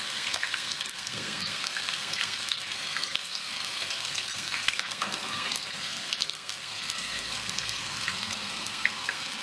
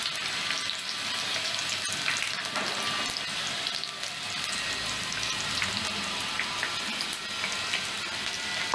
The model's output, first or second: first